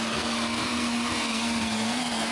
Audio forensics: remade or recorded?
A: remade